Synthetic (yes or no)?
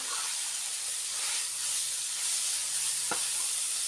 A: no